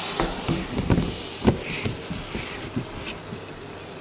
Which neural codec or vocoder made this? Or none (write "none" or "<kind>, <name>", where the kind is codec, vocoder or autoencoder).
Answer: none